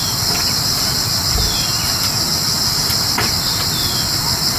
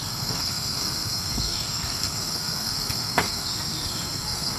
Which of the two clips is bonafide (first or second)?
first